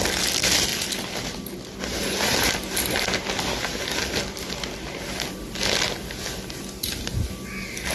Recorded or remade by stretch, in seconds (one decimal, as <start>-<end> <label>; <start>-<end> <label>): 0.0-7.9 recorded